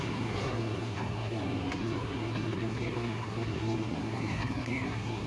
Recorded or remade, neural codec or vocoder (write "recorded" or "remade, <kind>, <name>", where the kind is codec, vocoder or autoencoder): remade, codec, SNAC